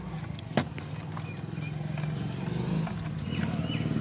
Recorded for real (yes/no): yes